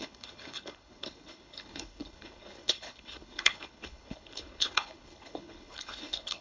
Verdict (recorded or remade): remade